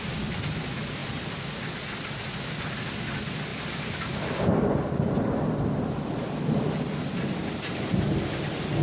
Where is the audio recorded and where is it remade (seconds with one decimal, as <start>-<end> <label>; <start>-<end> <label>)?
0.0-1.0 recorded; 1.0-1.7 remade; 1.7-3.5 recorded; 3.5-4.8 remade; 4.8-8.8 recorded